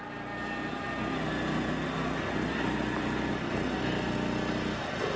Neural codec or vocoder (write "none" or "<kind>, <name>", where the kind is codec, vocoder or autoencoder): none